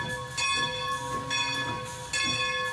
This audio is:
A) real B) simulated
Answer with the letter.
A